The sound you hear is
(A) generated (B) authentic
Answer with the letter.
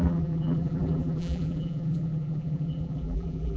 A